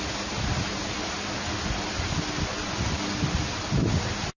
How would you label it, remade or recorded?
recorded